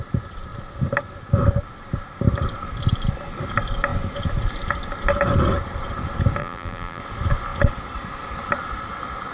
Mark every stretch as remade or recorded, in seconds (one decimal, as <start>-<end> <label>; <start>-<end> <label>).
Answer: 0.0-6.4 recorded; 6.4-7.0 remade; 7.0-9.3 recorded